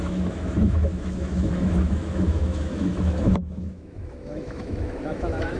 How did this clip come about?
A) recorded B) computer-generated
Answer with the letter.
B